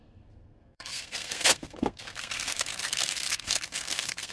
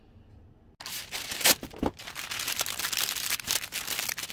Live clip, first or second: second